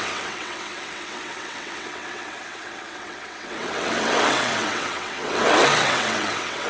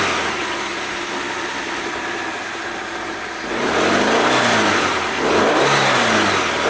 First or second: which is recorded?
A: second